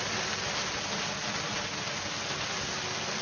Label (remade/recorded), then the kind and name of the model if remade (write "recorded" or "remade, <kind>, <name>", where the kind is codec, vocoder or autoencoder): recorded